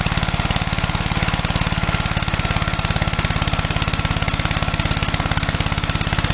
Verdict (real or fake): real